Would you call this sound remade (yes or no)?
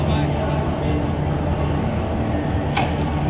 no